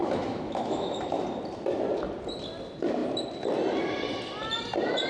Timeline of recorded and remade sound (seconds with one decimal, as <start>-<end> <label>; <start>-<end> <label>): 0.0-1.2 remade; 1.2-5.1 recorded